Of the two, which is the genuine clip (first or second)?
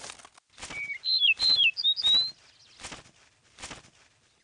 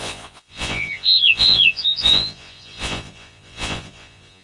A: first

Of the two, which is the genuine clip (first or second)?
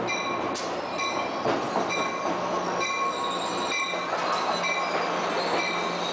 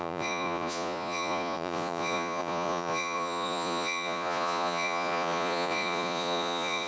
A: first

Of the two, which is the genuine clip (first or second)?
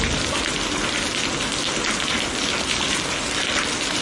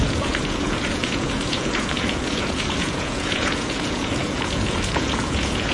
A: first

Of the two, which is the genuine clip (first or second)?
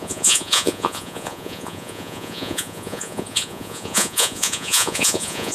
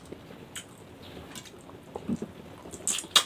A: second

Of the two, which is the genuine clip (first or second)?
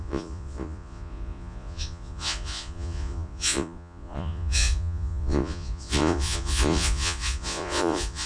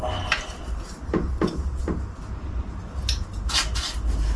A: second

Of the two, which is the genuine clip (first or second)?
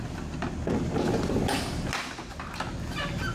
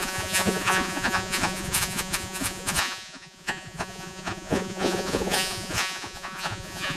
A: first